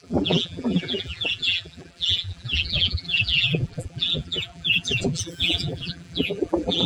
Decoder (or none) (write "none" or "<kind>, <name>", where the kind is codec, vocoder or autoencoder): vocoder, BigVGAN v2